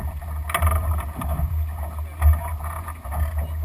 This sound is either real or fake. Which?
real